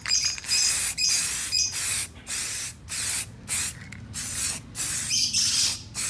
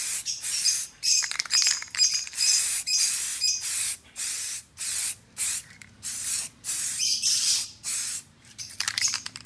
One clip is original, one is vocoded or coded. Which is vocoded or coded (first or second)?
second